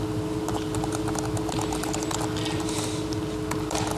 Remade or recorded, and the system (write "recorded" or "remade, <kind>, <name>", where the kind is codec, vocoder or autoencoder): recorded